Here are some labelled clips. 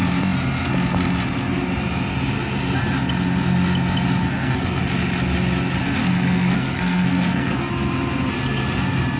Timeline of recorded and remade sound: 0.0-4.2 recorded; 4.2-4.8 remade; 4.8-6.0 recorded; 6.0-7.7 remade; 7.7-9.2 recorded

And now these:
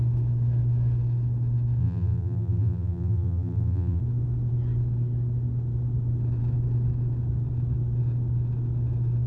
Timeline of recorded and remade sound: 0.0-1.8 recorded; 1.8-4.0 remade; 4.0-9.3 recorded

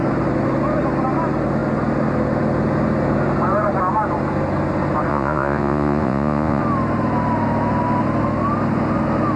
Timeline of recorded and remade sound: 0.0-5.1 recorded; 5.1-6.6 remade; 6.6-9.4 recorded

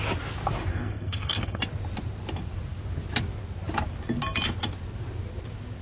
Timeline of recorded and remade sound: 0.0-0.7 recorded; 0.7-1.6 remade; 1.6-5.8 recorded

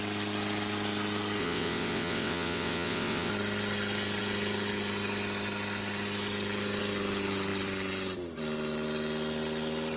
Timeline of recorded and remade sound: 0.0-1.4 recorded; 1.4-3.3 remade; 3.3-10.0 recorded

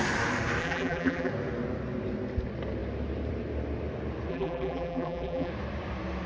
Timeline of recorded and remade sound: 0.0-0.6 recorded; 0.6-1.3 remade; 1.3-4.3 recorded; 4.3-5.5 remade; 5.5-6.3 recorded

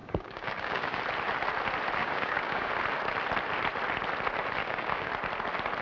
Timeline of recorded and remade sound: 0.0-1.0 remade; 1.0-2.0 recorded; 2.0-2.7 remade; 2.7-4.6 recorded; 4.6-5.1 remade; 5.1-5.8 recorded

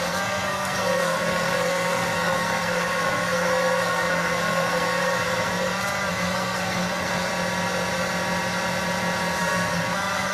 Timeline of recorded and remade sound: 0.0-5.5 remade; 5.5-6.1 recorded; 6.1-7.3 remade; 7.3-9.4 recorded; 9.4-10.3 remade